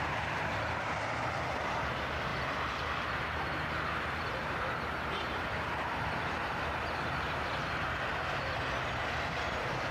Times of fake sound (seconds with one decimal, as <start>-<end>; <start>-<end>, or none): 0.0-9.9